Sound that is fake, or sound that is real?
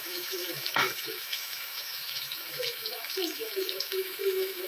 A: fake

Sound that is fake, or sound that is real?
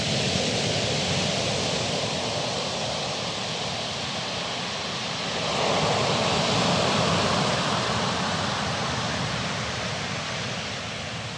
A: real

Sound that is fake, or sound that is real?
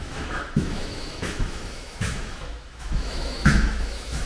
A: fake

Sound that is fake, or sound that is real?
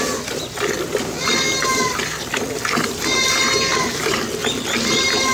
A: real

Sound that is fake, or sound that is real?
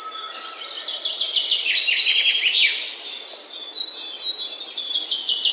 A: real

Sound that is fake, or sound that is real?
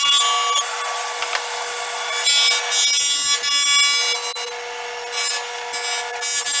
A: real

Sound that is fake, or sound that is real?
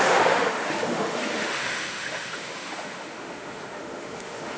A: fake